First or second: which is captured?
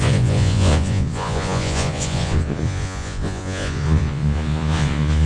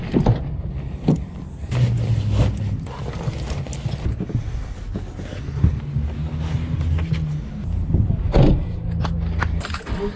second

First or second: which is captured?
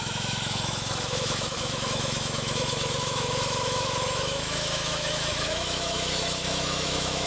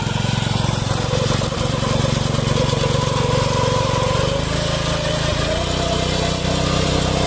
second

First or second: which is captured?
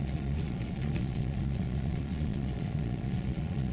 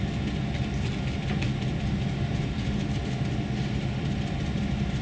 second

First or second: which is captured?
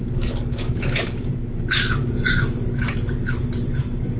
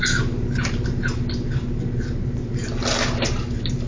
second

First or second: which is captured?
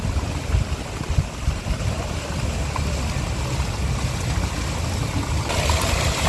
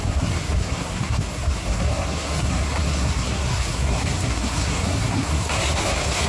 first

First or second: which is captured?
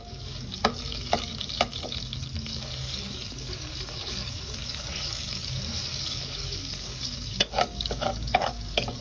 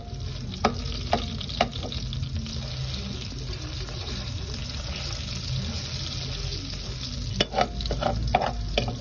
second